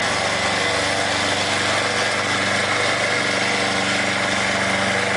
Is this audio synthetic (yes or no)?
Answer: no